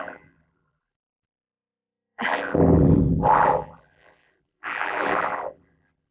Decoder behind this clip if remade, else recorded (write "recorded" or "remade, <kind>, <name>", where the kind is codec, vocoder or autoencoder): remade, vocoder, BigVGAN v2